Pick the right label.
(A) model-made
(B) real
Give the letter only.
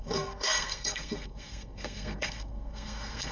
A